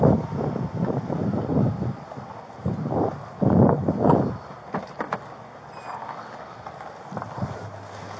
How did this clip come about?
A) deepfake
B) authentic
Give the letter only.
B